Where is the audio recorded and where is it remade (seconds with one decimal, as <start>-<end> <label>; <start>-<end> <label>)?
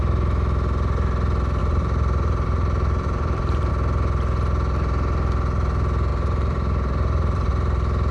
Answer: 0.0-1.6 recorded; 1.6-3.7 remade; 3.7-6.1 recorded; 6.1-7.5 remade; 7.5-8.1 recorded